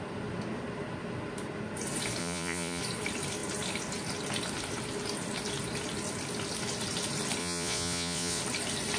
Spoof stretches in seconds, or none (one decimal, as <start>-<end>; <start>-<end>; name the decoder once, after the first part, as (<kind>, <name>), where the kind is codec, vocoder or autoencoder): 2.2-2.8 (vocoder, Vocos); 7.4-8.4